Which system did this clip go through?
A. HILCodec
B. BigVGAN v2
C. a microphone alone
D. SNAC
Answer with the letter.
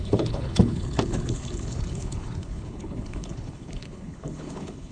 A